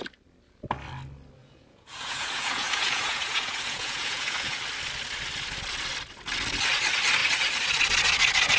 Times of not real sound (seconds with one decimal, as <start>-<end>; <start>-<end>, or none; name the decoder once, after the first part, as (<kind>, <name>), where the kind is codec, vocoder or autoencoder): 1.4-4.6 (vocoder, Vocos)